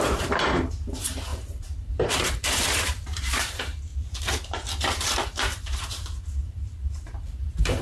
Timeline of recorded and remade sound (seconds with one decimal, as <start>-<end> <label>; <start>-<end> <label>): 0.0-3.9 remade; 3.9-4.8 recorded; 4.8-7.8 remade